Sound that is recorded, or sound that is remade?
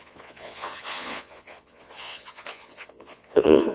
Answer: remade